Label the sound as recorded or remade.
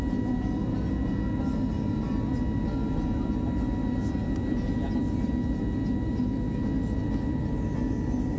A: recorded